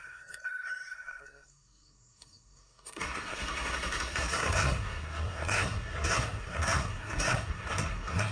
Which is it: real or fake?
fake